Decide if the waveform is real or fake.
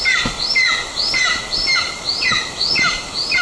real